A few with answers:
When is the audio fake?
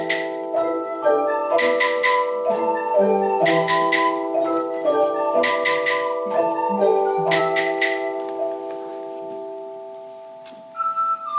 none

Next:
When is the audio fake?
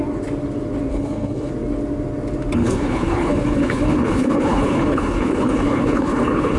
0.9-1.5 (codec, HILCodec); 2.6-6.6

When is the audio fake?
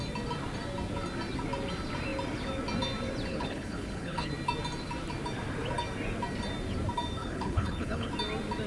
3.3-4.3 (codec, HILCodec); 7.2-8.1